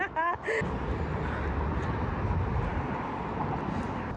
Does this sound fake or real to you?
real